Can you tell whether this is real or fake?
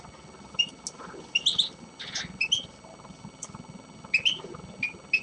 real